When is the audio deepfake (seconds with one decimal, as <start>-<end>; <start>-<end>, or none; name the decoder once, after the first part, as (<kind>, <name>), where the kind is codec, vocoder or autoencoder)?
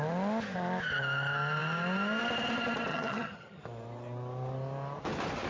2.9-3.6 (vocoder, HiFi-GAN)